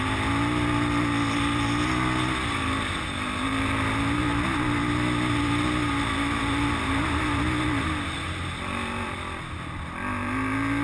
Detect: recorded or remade recorded